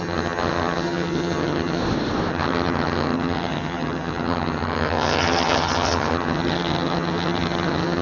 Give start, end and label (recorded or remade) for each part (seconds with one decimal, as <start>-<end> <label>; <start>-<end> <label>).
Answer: 0.0-1.8 remade; 1.8-2.3 recorded; 2.3-8.0 remade